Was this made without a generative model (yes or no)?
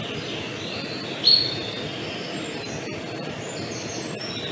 yes